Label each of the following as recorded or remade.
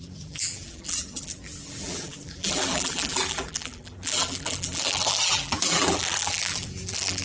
remade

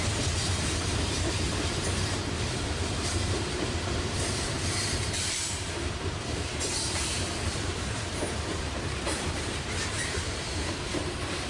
remade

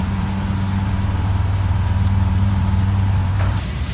remade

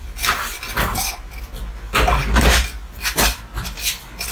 recorded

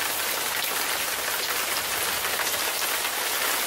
recorded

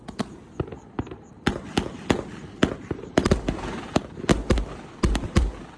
recorded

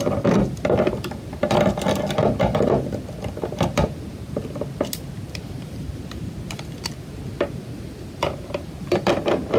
recorded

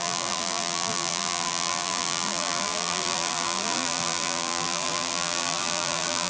remade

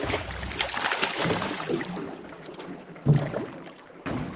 recorded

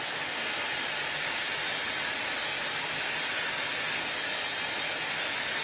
recorded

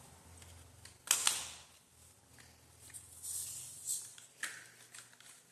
recorded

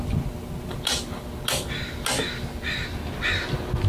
recorded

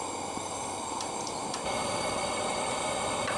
recorded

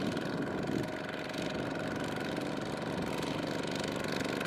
recorded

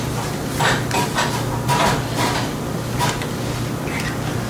recorded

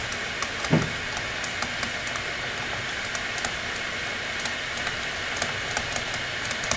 recorded